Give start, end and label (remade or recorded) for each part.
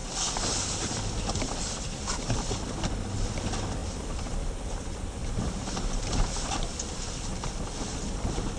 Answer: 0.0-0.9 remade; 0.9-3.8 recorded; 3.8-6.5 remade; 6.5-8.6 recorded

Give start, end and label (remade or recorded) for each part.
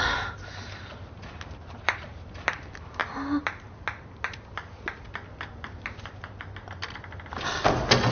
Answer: 0.0-8.1 recorded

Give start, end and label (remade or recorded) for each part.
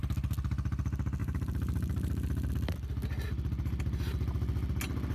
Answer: 0.0-1.2 recorded; 1.2-2.5 remade; 2.5-5.1 recorded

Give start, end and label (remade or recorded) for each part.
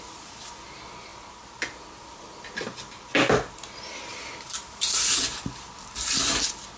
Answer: 0.0-6.8 recorded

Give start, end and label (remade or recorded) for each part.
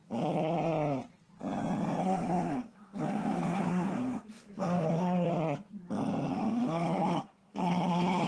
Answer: 0.0-2.0 recorded; 2.0-5.3 remade; 5.3-6.3 recorded; 6.3-8.3 remade